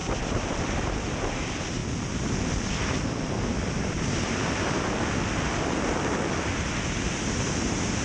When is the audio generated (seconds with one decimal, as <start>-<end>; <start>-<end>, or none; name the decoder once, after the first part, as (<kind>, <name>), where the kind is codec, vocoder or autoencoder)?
none